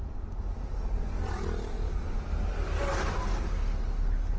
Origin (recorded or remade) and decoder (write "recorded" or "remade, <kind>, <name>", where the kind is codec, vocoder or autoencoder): recorded